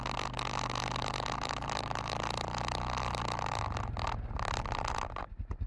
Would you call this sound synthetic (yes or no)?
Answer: no